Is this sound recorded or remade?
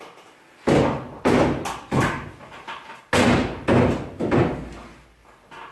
recorded